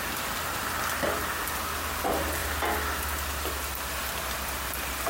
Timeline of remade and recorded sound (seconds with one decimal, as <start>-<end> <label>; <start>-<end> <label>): 0.0-5.1 recorded